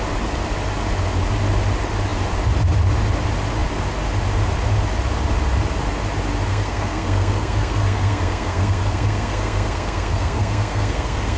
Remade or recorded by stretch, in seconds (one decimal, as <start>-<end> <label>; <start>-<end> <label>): 0.0-6.5 recorded; 6.5-11.4 remade